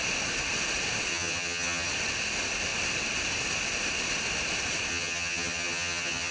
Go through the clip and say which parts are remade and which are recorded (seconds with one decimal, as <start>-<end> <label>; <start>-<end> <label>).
0.0-1.1 recorded; 1.1-1.9 remade; 1.9-4.9 recorded; 4.9-6.3 remade